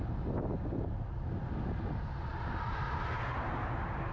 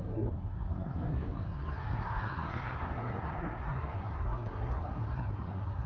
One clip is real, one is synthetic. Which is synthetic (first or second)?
second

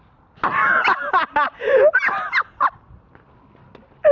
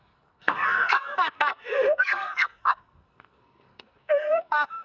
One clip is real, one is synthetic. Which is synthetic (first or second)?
second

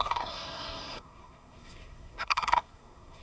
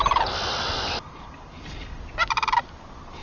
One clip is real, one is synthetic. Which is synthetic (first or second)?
first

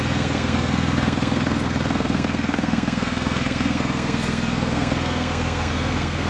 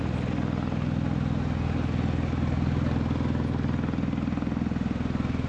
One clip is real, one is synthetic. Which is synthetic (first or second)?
first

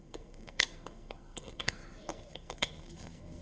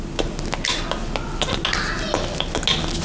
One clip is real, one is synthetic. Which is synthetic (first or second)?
first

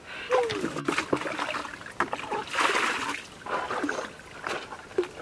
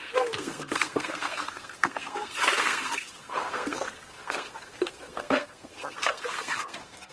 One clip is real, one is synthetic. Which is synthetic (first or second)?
second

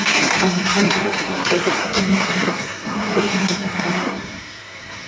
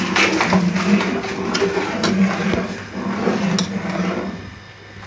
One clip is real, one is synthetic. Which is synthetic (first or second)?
first